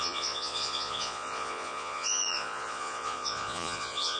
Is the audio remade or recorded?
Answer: remade